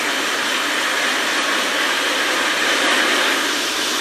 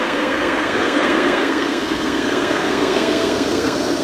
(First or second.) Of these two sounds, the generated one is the second